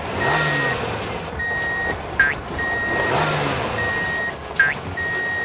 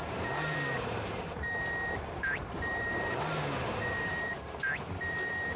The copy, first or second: second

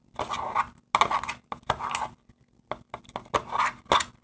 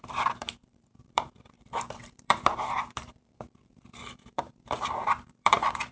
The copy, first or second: second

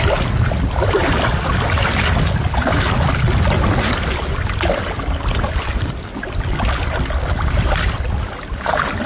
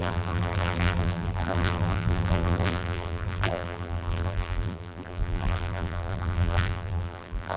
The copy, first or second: second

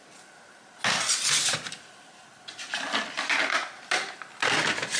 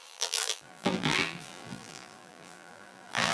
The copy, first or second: second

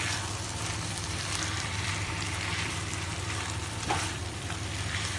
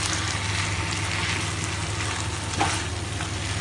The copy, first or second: first